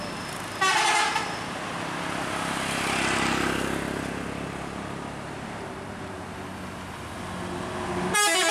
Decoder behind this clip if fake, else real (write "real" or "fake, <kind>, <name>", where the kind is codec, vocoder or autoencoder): real